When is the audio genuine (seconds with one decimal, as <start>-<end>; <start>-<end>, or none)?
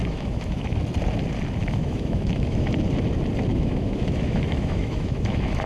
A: 0.8-1.6; 2.7-3.5